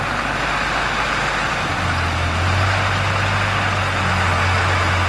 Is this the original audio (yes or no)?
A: yes